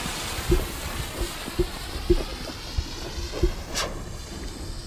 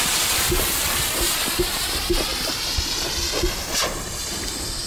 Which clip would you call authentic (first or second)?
first